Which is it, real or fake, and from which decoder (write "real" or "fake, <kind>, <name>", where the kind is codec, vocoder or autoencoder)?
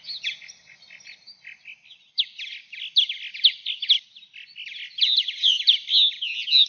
real